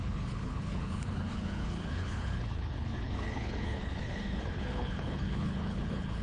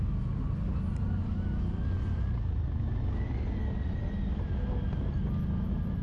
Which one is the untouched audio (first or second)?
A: second